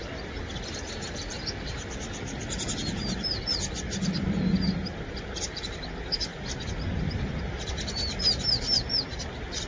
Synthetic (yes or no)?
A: no